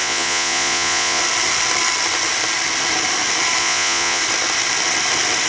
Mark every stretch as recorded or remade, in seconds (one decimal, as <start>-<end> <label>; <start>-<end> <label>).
0.0-1.2 remade; 1.2-3.6 recorded; 3.6-4.2 remade; 4.2-5.5 recorded